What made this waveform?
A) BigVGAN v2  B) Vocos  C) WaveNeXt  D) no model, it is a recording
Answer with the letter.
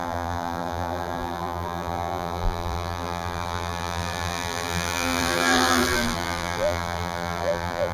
A